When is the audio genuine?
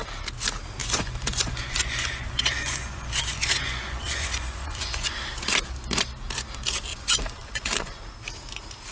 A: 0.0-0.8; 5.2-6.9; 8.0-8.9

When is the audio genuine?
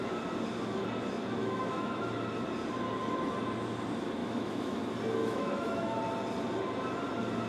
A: 0.0-1.4; 2.0-4.2; 4.8-5.2; 6.0-7.5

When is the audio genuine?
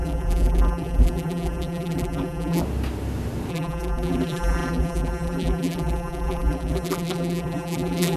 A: 2.6-3.5